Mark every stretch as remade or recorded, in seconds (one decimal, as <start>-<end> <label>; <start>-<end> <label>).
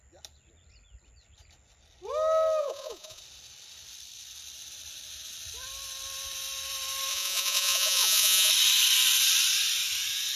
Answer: 0.0-2.6 recorded; 2.6-3.2 remade; 3.2-7.1 recorded; 7.1-8.5 remade; 8.5-10.4 recorded